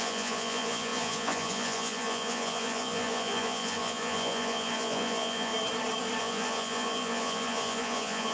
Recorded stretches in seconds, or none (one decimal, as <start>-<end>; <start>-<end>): 5.5-6.2